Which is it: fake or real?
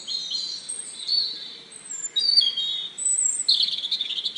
real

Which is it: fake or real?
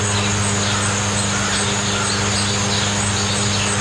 real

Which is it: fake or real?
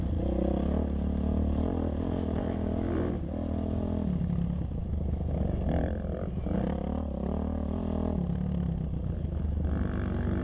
real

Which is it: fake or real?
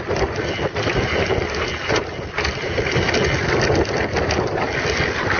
real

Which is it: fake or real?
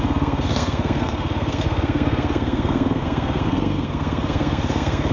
fake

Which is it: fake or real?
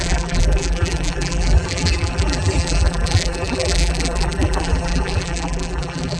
fake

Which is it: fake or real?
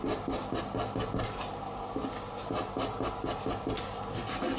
real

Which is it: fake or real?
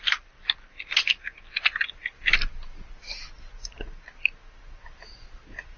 real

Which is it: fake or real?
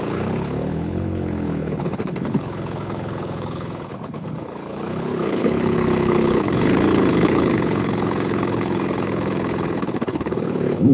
fake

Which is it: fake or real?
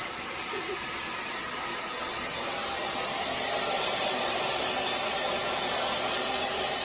real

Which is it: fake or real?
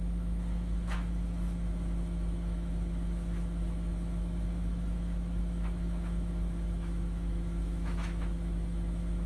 fake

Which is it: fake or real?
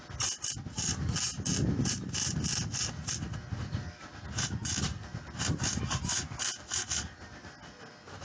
real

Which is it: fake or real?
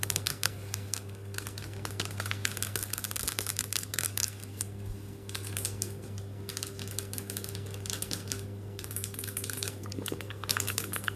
fake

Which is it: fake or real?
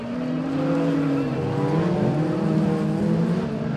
real